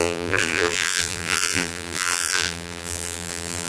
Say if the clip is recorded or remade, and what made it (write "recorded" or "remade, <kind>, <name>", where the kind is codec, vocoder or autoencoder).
remade, vocoder, BigVGAN v2